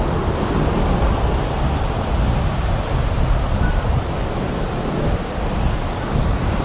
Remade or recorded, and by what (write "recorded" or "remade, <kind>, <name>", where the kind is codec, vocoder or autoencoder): recorded